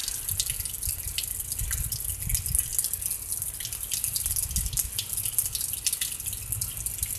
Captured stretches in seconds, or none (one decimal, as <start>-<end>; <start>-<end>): 0.0-7.2